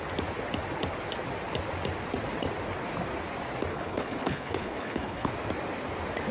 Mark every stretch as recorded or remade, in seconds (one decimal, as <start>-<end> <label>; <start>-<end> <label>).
0.0-3.7 recorded; 3.7-5.3 remade; 5.3-6.3 recorded

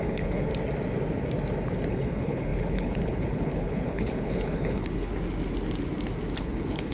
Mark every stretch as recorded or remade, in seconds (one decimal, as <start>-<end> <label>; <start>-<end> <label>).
0.0-0.5 remade; 0.5-1.9 recorded; 1.9-5.1 remade; 5.1-6.4 recorded; 6.4-6.9 remade

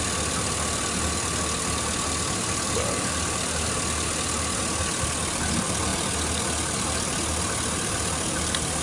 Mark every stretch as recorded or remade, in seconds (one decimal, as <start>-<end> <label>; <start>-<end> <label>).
0.0-8.8 recorded

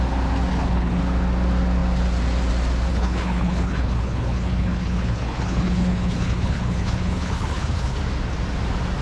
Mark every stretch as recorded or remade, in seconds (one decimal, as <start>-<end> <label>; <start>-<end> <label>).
0.0-0.5 recorded; 0.5-1.0 remade; 1.0-2.9 recorded; 2.9-8.0 remade; 8.0-9.0 recorded

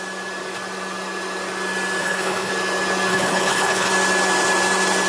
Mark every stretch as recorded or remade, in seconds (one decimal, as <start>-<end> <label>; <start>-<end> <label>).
0.0-2.0 recorded; 2.0-2.5 remade; 2.5-3.1 recorded; 3.1-3.9 remade; 3.9-5.1 recorded

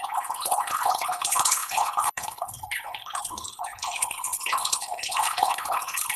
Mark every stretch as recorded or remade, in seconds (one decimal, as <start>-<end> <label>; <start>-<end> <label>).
0.0-6.2 remade

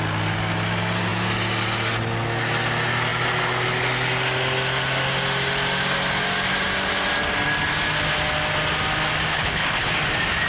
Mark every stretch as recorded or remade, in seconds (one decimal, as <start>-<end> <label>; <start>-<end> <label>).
0.0-9.3 recorded; 9.3-9.9 remade; 9.9-10.5 recorded

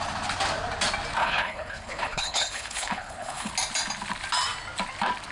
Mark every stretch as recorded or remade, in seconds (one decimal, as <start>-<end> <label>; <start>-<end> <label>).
0.0-1.2 recorded; 1.2-3.5 remade; 3.5-5.3 recorded